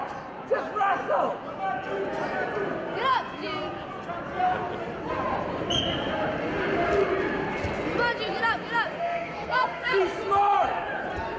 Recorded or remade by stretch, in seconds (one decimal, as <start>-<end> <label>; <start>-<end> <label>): 0.0-9.0 recorded; 9.0-10.0 remade; 10.0-11.4 recorded